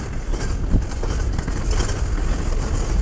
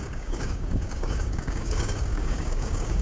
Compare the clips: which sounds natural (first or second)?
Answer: first